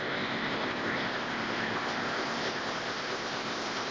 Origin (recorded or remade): remade